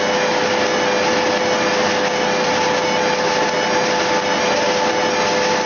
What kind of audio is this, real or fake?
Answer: real